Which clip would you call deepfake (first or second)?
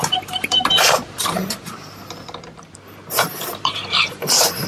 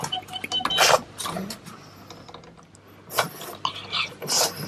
first